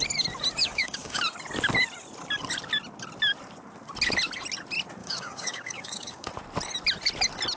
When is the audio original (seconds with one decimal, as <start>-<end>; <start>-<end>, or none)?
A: 0.0-0.6; 1.2-5.0; 6.3-7.6